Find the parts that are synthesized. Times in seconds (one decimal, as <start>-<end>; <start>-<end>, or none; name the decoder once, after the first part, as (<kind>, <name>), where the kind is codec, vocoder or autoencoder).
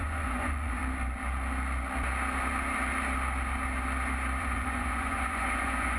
0.0-0.8 (vocoder, Vocos); 4.4-6.0